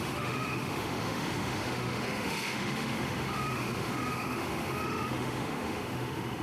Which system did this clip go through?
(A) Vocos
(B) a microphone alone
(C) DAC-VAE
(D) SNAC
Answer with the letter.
C